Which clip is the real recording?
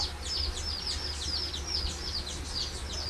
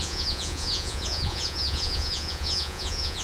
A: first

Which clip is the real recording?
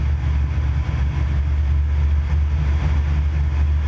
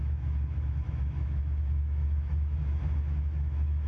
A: first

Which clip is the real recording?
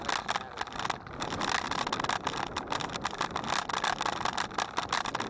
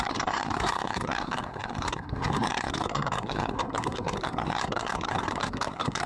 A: first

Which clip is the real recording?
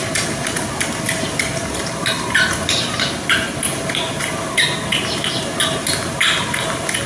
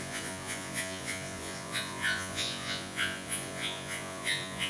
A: first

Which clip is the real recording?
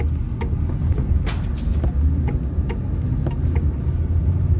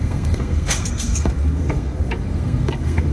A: first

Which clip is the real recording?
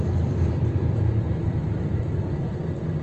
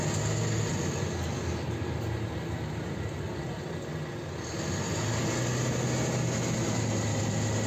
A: second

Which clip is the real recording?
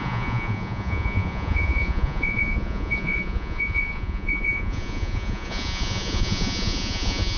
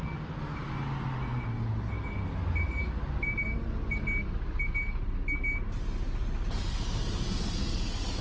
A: second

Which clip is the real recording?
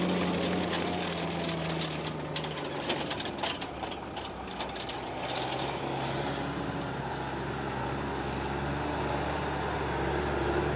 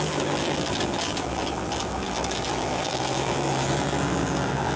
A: first